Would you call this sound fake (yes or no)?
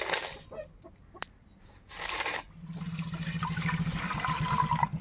no